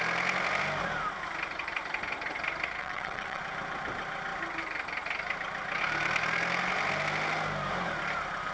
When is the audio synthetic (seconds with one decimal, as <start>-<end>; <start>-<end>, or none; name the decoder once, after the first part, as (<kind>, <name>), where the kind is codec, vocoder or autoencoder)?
2.8-3.4 (vocoder, WaveNeXt)